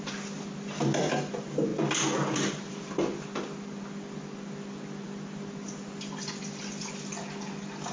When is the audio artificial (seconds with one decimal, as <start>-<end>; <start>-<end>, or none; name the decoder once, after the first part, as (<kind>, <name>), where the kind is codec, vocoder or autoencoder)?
none